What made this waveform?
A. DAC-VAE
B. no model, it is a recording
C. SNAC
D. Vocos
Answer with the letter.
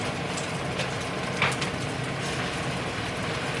B